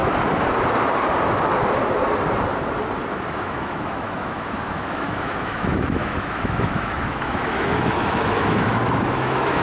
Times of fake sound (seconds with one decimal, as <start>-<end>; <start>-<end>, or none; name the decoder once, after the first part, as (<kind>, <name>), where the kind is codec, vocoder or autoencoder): 3.3-9.6 (autoencoder, DAC-VAE)